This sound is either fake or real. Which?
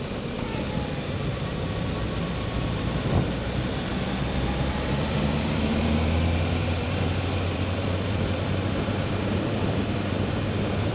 fake